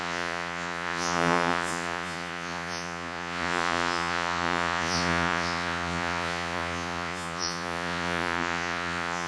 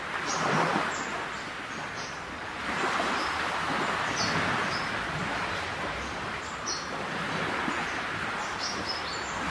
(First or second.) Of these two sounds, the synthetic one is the first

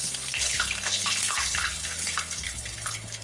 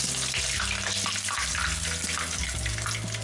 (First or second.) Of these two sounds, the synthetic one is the first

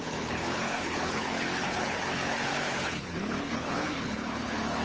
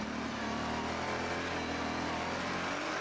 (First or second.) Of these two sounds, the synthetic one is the first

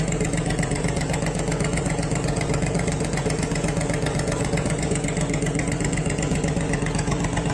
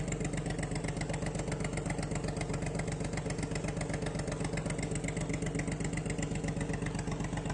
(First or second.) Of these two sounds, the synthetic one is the first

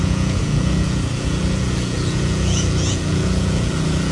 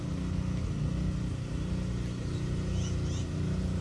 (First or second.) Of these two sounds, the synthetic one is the first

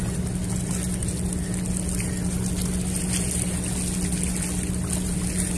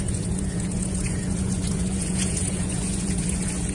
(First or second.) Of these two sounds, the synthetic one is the second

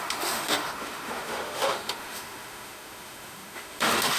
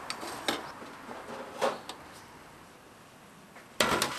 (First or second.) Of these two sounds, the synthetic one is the first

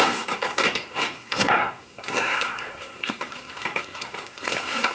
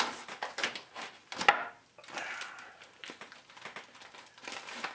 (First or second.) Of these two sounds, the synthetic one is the first